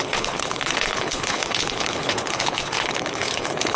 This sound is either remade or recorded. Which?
remade